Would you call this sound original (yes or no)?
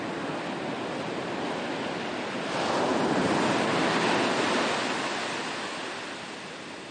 yes